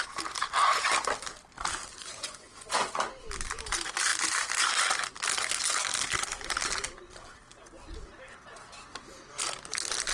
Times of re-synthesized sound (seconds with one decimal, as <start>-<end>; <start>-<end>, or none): 1.9-2.9